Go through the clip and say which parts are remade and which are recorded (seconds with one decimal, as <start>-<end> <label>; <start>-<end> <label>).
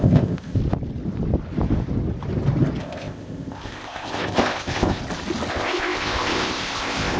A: 0.0-0.6 remade; 0.6-2.8 recorded; 2.8-5.0 remade; 5.0-5.5 recorded; 5.5-7.2 remade